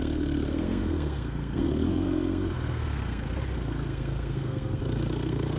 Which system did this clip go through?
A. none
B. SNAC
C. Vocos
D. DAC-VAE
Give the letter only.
B